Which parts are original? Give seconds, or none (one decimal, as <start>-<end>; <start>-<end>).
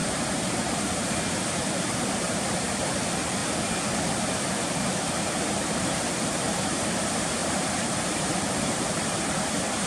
3.4-5.2